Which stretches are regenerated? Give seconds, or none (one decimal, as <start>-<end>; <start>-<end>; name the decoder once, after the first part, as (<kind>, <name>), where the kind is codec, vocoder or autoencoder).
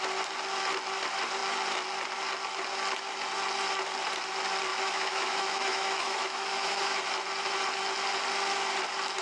4.7-7.0 (autoencoder, DAC-VAE)